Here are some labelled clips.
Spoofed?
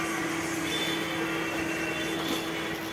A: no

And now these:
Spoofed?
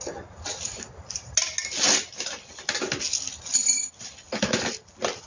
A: no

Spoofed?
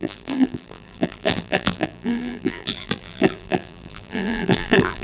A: yes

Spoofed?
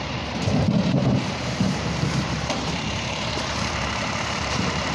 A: yes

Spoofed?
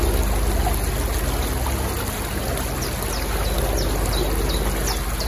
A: no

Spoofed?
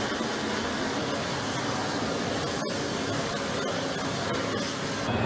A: no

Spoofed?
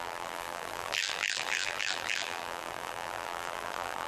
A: yes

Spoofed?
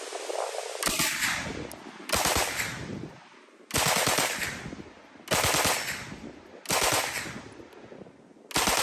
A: no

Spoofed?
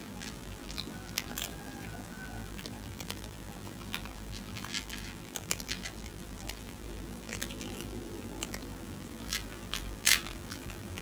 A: yes